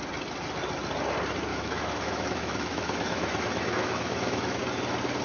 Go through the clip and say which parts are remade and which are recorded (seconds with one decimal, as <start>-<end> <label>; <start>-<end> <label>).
0.0-1.5 recorded; 1.5-4.6 remade; 4.6-5.2 recorded